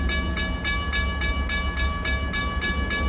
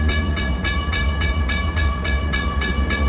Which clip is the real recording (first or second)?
first